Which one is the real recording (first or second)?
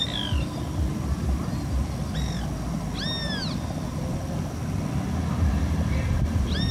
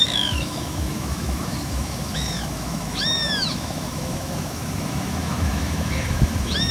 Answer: first